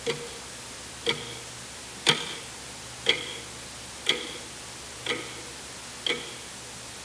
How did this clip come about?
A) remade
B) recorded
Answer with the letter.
B